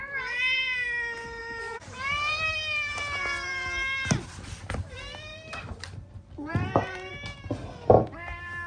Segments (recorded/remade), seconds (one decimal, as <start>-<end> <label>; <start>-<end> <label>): 0.0-1.4 recorded; 1.4-2.5 remade; 2.5-5.3 recorded; 5.3-7.1 remade; 7.1-8.7 recorded